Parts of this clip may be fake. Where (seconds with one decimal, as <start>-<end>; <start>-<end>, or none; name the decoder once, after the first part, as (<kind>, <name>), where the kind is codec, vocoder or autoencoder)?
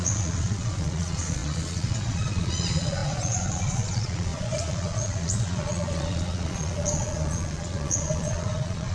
0.0-8.9 (vocoder, Vocos)